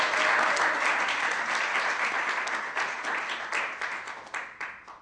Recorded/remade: recorded